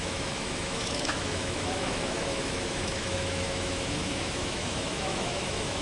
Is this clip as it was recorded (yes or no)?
no